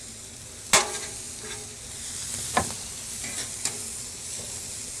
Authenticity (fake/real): real